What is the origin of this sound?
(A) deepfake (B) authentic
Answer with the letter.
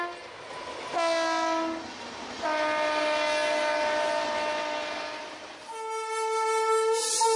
B